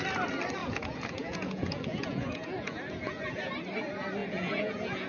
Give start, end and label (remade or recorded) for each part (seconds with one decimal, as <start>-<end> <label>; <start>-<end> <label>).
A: 0.0-0.6 recorded; 0.6-3.5 remade; 3.5-4.2 recorded; 4.2-5.1 remade